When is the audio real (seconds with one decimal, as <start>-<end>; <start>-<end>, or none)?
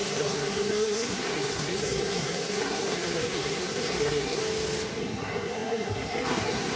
4.4-5.0